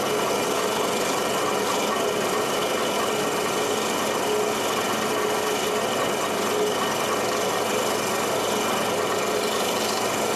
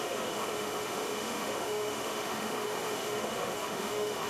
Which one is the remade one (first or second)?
second